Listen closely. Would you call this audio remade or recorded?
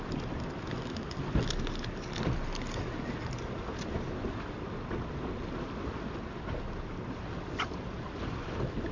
recorded